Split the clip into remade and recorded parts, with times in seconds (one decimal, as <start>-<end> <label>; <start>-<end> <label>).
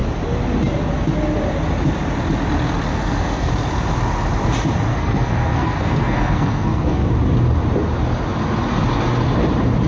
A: 0.0-2.9 recorded; 2.9-3.5 remade; 3.5-4.9 recorded; 4.9-7.1 remade; 7.1-9.9 recorded